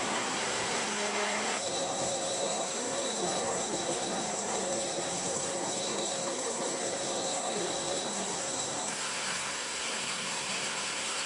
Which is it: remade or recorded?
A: remade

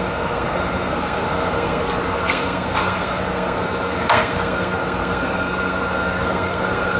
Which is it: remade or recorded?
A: remade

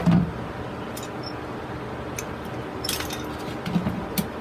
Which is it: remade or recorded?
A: recorded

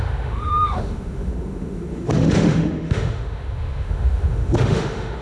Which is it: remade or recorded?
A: remade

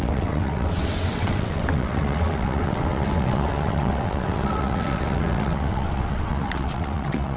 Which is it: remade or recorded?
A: remade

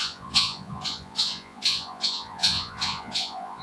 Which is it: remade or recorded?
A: remade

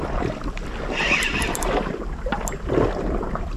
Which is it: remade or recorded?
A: recorded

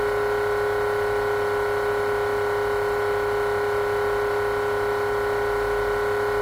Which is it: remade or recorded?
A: recorded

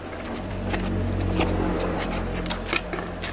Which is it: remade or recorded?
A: recorded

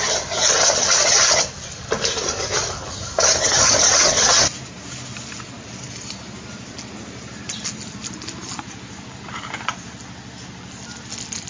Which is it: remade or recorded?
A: recorded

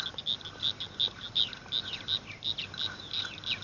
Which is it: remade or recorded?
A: recorded